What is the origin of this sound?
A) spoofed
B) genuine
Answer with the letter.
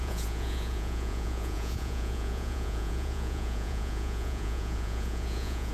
A